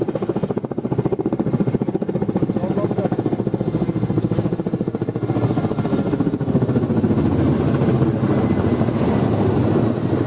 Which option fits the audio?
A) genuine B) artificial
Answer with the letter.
A